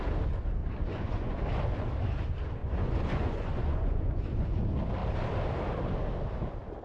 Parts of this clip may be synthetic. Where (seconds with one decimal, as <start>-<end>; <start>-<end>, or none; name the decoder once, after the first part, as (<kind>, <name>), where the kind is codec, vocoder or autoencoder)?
0.6-1.4 (vocoder, Vocos); 2.6-4.6